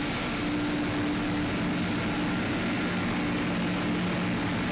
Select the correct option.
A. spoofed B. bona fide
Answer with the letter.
B